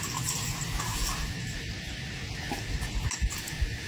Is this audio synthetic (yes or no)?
no